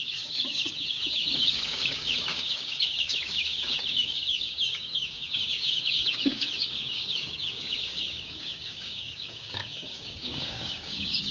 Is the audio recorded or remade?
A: remade